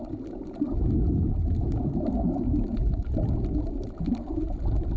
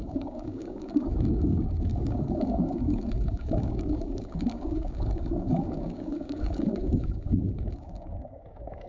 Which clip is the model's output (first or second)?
second